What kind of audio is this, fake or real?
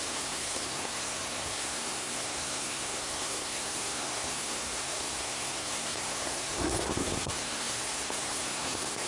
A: fake